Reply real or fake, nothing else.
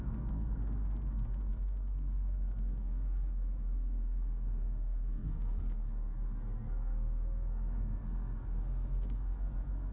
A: fake